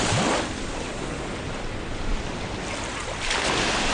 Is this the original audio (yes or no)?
yes